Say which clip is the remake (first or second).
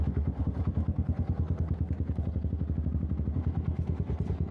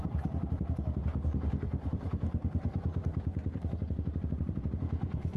second